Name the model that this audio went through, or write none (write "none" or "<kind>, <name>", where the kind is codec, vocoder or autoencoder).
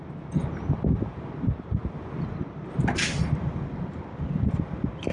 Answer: none